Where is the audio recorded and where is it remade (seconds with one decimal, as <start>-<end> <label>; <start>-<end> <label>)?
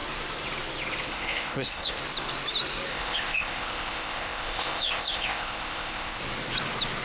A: 0.0-1.1 recorded; 1.1-2.0 remade; 2.0-2.9 recorded; 2.9-6.2 remade; 6.2-7.0 recorded